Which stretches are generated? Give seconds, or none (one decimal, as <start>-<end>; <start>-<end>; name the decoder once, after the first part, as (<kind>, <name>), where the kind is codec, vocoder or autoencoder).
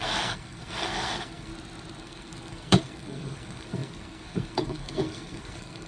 0.0-1.5 (codec, SNAC); 2.0-5.9